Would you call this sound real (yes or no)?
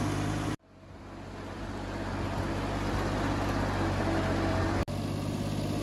yes